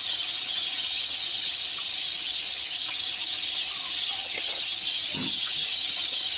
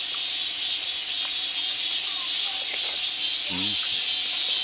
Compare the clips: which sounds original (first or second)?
second